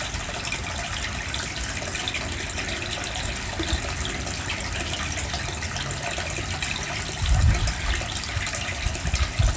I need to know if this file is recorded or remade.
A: recorded